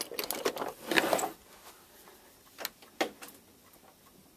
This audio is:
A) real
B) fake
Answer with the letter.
A